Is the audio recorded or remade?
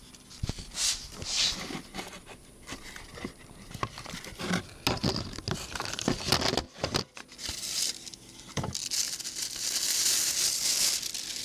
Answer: recorded